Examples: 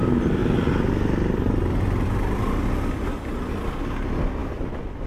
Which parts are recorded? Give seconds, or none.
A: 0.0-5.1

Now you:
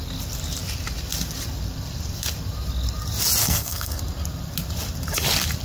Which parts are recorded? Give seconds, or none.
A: 0.0-3.4; 4.0-5.6

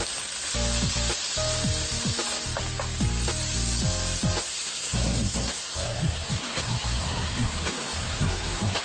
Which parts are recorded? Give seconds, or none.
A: 0.0-4.5

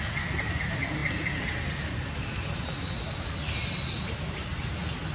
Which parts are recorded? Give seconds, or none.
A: 0.0-5.1

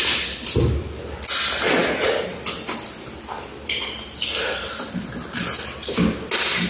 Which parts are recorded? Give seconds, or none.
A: 0.0-6.7

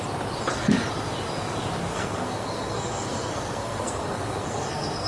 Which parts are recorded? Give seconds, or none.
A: 0.0-1.9

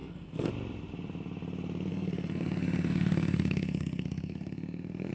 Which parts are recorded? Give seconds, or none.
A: 0.5-1.9

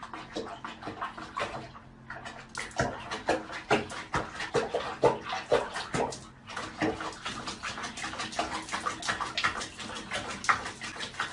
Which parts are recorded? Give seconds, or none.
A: 0.0-11.3